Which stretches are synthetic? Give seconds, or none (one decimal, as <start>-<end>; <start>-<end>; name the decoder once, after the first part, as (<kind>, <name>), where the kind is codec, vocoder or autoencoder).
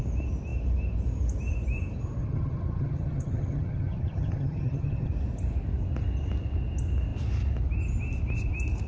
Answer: 2.2-5.1 (vocoder, HiFi-GAN)